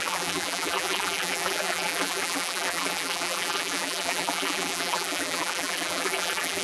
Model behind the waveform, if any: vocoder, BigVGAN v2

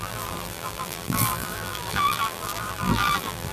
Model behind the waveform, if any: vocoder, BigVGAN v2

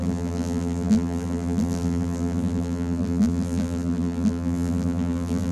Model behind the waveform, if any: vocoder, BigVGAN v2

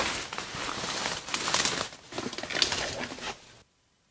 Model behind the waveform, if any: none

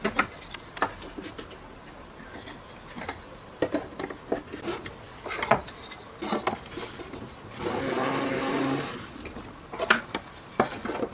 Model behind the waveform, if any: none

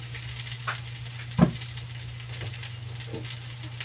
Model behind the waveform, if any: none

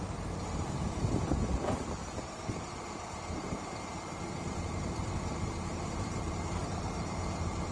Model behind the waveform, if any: vocoder, BigVGAN v2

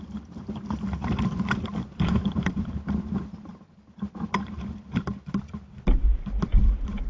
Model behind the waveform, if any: vocoder, BigVGAN v2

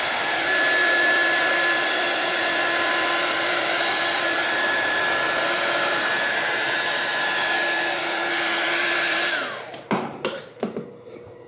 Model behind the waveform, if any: vocoder, BigVGAN v2